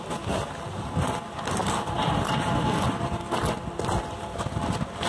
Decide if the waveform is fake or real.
real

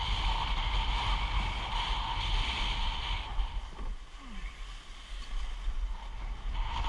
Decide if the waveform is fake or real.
real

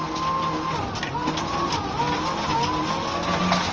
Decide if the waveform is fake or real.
real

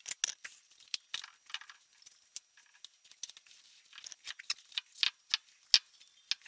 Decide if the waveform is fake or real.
real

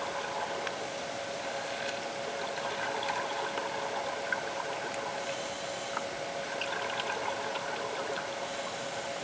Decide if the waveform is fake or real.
real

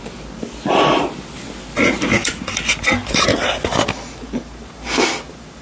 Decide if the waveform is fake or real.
real